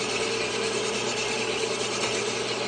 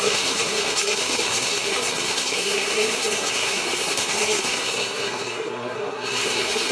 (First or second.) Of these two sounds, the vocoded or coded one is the second